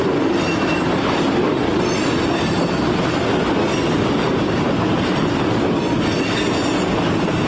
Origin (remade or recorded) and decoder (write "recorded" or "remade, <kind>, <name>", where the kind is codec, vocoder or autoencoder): recorded